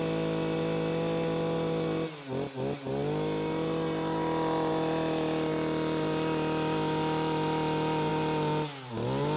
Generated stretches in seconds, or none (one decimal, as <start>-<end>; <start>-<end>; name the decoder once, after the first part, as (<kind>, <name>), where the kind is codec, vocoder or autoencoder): none